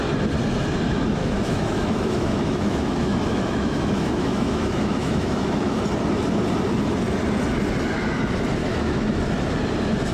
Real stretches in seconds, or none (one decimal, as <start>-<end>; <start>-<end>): 0.0-1.2; 5.8-8.6; 9.2-10.1